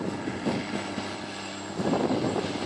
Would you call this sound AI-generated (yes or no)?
no